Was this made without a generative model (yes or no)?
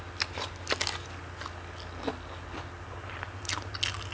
yes